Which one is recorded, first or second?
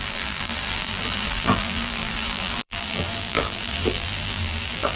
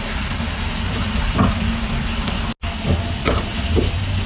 second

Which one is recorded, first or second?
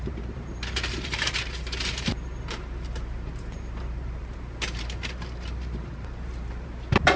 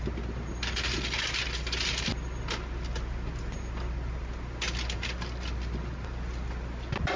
second